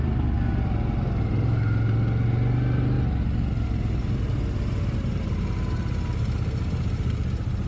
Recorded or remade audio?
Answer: recorded